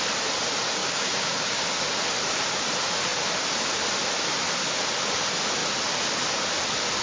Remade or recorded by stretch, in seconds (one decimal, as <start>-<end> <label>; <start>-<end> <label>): 0.0-0.8 recorded; 0.8-1.6 remade; 1.6-7.0 recorded